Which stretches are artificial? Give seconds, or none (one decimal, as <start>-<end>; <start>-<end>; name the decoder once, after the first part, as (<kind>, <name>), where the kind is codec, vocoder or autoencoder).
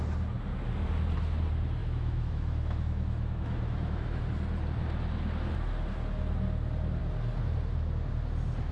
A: 1.8-4.2 (autoencoder, DAC-VAE)